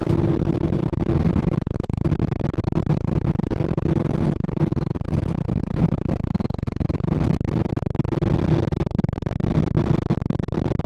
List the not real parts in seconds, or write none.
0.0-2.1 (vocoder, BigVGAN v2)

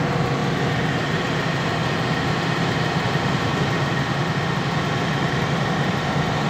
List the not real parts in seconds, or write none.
0.0-0.4 (vocoder, BigVGAN v2); 0.9-1.8; 5.7-6.5

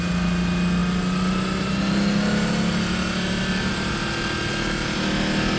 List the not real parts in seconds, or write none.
none